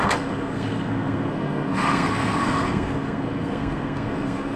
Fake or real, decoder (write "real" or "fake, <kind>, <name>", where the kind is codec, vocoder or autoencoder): fake, codec, SNAC